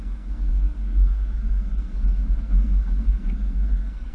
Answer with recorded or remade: remade